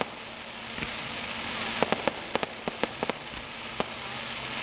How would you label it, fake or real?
real